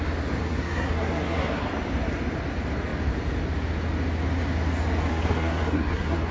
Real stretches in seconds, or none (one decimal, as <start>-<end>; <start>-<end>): 0.0-0.4; 1.6-5.1